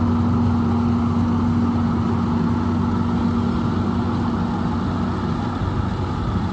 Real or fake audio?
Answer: real